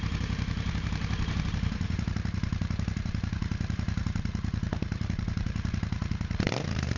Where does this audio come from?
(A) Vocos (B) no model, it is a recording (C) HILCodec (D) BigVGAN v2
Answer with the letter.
D